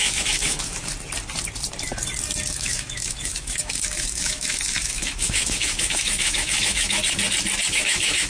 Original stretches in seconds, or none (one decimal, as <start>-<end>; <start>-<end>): 0.9-2.5; 7.0-7.7